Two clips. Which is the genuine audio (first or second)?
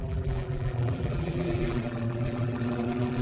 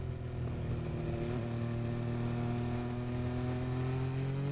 second